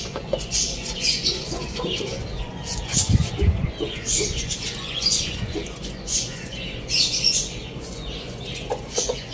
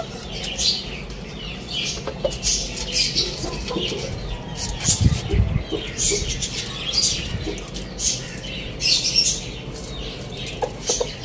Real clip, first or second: second